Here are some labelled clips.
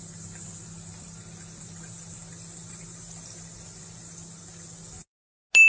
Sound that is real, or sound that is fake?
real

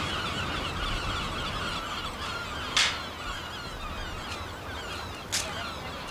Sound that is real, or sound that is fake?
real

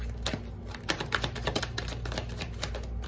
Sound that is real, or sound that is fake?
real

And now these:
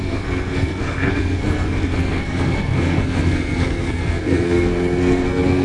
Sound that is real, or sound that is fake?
fake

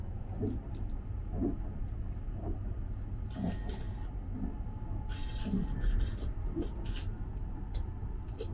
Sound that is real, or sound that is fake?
real